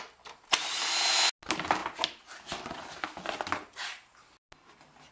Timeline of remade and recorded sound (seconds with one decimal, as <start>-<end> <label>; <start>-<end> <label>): 0.0-5.1 recorded